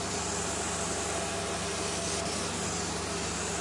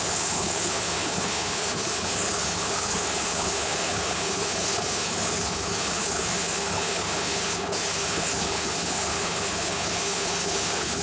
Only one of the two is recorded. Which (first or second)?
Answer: first